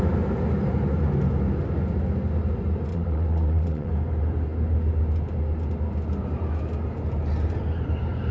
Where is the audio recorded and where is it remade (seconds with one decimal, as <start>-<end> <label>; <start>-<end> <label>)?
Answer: 0.0-2.9 recorded; 2.9-3.9 remade; 3.9-8.3 recorded